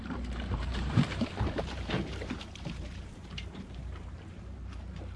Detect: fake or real fake